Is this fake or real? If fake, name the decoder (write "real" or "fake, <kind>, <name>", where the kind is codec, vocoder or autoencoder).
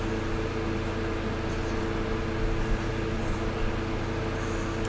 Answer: real